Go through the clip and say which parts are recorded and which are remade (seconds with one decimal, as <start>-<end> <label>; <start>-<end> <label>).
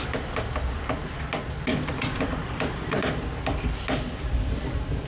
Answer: 0.0-1.7 recorded; 1.7-3.1 remade; 3.1-5.1 recorded